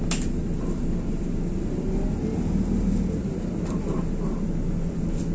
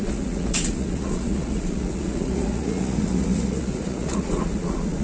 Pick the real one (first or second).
first